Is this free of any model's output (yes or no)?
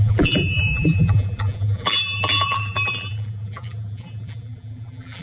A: no